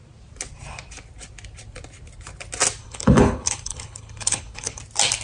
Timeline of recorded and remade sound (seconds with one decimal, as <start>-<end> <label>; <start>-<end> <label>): 0.0-2.8 recorded; 2.8-4.8 remade; 4.8-5.2 recorded